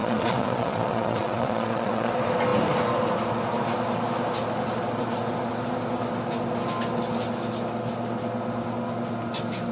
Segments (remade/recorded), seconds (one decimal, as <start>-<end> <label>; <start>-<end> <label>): 0.0-2.1 remade; 2.1-9.7 recorded